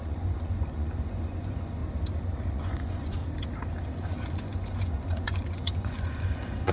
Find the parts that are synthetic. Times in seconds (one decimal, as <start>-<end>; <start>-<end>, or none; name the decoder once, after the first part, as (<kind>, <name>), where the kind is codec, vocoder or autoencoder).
0.0-1.8 (vocoder, Vocos); 2.5-3.2; 4.0-6.7

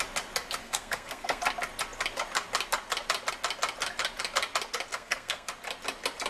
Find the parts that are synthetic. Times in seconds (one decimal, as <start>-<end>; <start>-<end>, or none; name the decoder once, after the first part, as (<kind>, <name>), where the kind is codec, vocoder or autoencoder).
0.6-1.4 (codec, SNAC); 4.9-5.5

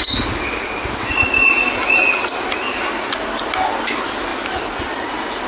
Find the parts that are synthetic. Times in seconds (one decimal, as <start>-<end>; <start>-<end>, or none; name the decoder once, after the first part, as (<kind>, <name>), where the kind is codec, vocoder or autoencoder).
none

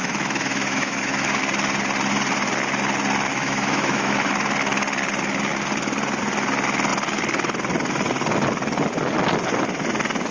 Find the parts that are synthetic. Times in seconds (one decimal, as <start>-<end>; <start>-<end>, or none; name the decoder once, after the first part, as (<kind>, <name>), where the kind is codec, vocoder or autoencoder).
0.0-1.4 (autoencoder, DAC-VAE); 3.3-4.3